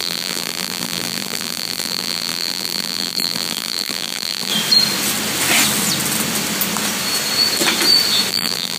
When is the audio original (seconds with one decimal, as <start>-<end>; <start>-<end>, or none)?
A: 4.5-8.3